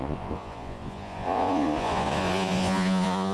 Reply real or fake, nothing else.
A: fake